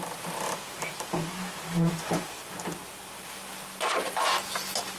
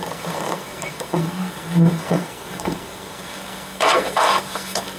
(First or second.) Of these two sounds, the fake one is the second